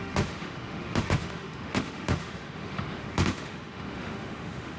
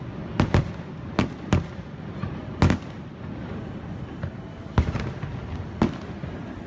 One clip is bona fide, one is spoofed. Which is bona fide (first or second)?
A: second